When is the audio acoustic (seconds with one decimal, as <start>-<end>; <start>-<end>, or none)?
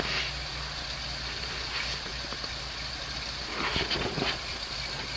0.0-5.2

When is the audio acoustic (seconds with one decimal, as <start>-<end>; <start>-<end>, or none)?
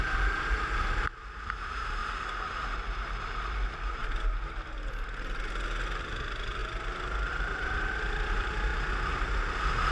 2.0-6.0; 6.6-7.3; 8.7-9.5